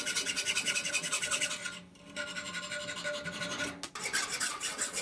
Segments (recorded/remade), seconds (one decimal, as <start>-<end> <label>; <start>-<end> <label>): 0.0-1.6 remade; 1.6-4.4 recorded; 4.4-5.0 remade